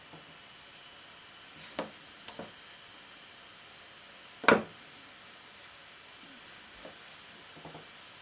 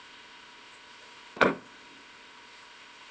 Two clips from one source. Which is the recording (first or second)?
first